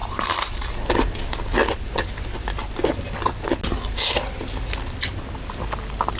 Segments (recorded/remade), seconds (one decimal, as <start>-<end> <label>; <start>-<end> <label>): 0.0-0.7 remade; 0.7-6.2 recorded